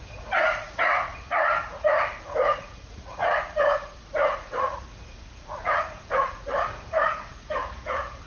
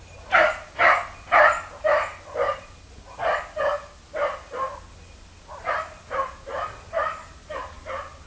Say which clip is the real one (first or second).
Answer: second